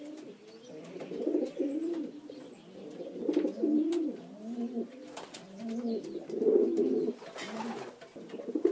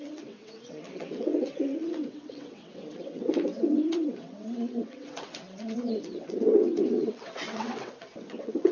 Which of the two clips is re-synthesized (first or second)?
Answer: second